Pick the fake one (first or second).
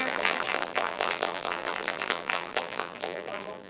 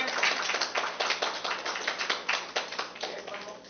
first